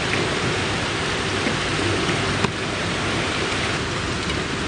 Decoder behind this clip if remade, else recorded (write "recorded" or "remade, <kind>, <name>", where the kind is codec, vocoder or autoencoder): recorded